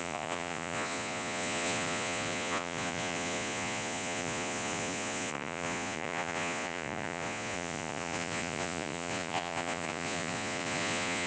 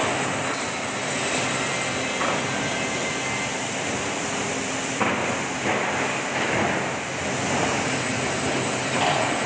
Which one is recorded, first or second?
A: second